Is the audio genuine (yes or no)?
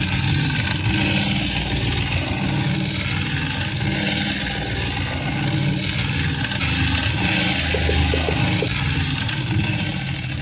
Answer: yes